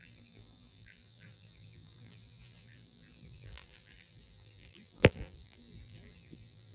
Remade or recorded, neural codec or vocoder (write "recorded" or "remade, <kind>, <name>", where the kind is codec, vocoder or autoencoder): remade, vocoder, BigVGAN v2